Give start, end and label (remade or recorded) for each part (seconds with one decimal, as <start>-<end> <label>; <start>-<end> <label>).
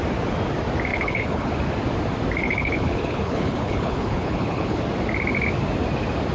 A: 0.0-0.9 recorded; 0.9-1.5 remade; 1.5-2.4 recorded; 2.4-4.8 remade; 4.8-6.3 recorded